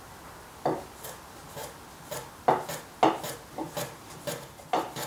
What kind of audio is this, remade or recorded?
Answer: recorded